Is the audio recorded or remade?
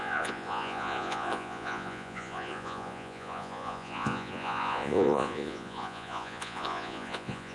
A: remade